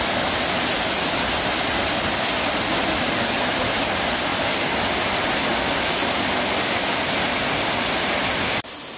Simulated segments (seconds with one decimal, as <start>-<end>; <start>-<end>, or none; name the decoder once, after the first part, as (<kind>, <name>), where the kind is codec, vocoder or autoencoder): none